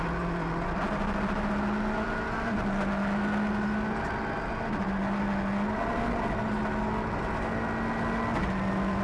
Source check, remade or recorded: recorded